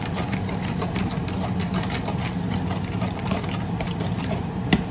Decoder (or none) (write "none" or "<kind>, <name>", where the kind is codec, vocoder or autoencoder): vocoder, BigVGAN v2